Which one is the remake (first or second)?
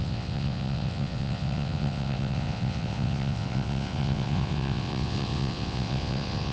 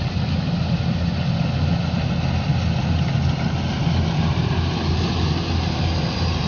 first